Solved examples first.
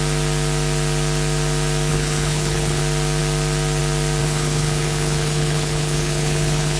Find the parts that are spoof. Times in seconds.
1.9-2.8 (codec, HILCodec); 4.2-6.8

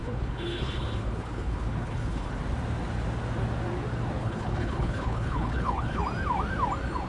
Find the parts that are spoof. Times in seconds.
0.0-2.3 (codec, HILCodec); 4.2-6.0

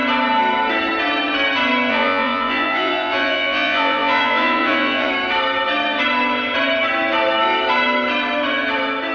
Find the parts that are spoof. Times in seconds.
1.9-5.1 (vocoder, Vocos)

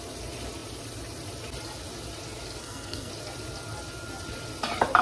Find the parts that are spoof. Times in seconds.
2.6-3.1 (codec, SNAC)

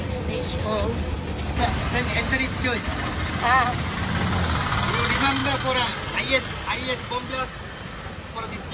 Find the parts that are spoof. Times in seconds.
none